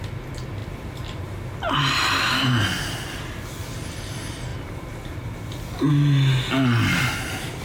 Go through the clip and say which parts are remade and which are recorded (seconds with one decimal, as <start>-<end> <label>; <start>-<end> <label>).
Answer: 0.0-0.6 recorded; 0.6-1.2 remade; 1.2-4.5 recorded; 4.5-5.5 remade; 5.5-7.6 recorded